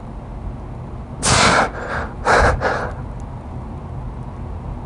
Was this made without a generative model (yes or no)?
yes